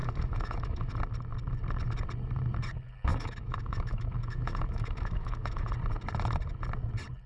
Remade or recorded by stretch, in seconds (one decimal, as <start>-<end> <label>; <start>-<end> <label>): 0.0-0.9 remade; 0.9-3.1 recorded; 3.1-5.7 remade; 5.7-7.3 recorded